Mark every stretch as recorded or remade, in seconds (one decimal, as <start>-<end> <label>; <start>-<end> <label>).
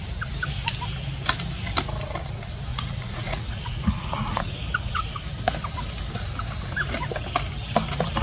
0.0-2.7 recorded; 2.7-5.0 remade; 5.0-8.2 recorded